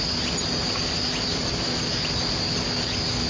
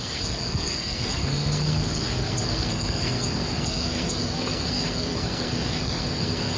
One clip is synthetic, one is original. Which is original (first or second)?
first